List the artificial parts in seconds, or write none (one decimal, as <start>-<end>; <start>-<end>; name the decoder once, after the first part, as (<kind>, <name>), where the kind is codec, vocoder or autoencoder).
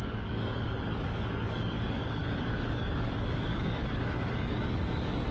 0.0-5.3 (codec, DAC)